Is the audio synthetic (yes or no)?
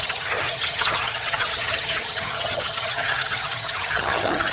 yes